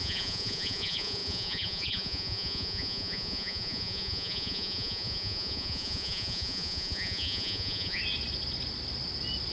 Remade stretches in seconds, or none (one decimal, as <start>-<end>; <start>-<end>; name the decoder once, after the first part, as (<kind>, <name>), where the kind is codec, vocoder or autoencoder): 0.0-8.0 (vocoder, Vocos)